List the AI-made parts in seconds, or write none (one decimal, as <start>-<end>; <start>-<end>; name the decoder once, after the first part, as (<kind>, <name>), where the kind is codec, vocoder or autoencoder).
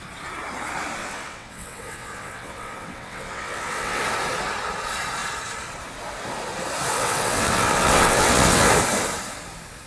1.0-4.0 (vocoder, WaveNeXt); 6.9-8.7